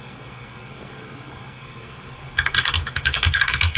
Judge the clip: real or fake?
fake